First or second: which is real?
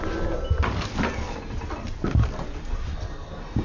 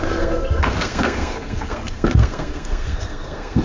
first